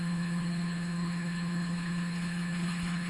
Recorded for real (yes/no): no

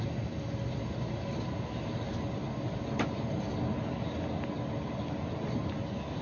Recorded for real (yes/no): yes